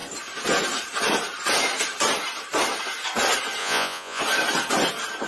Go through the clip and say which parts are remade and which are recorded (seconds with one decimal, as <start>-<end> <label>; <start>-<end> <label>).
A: 0.0-3.6 recorded; 3.6-4.2 remade; 4.2-5.3 recorded